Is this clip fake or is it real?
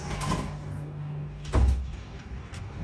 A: fake